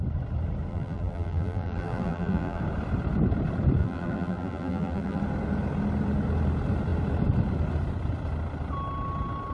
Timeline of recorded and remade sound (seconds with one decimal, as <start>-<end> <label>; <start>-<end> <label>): 0.0-0.7 recorded; 0.7-2.6 remade; 2.6-3.8 recorded; 3.8-5.2 remade; 5.2-9.5 recorded